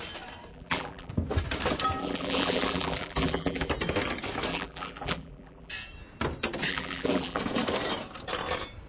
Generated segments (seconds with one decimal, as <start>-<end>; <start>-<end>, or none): 0.5-1.1; 2.0-3.7; 4.5-5.7; 6.7-7.4

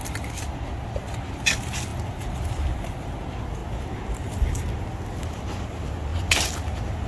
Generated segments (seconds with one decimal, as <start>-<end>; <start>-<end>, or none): none